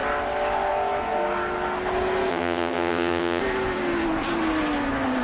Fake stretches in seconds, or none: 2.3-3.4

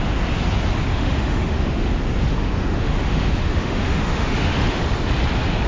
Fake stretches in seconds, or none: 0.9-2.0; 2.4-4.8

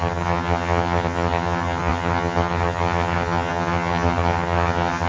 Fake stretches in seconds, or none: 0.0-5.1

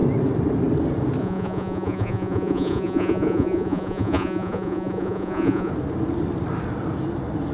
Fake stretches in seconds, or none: 1.2-5.7

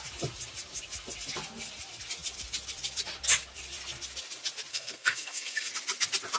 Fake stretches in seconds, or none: 4.7-5.7

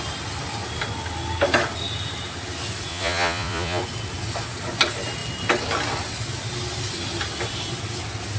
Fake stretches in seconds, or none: 2.9-3.8

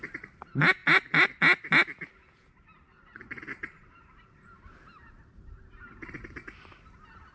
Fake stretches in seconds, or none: none